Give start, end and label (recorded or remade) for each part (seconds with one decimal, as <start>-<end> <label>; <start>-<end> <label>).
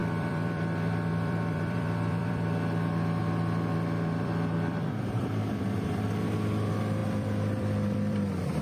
0.0-8.6 remade